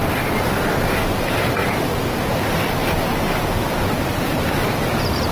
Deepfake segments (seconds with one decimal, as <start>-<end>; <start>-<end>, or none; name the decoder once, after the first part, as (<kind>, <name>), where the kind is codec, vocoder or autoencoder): 2.8-5.3 (vocoder, BigVGAN v2)